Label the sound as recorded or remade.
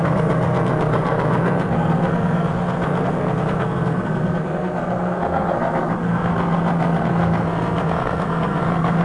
remade